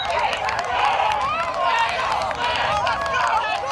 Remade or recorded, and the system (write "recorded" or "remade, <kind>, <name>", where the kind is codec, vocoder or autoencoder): recorded